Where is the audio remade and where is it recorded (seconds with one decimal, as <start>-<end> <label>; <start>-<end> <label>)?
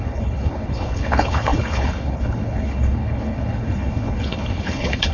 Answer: 0.0-5.1 remade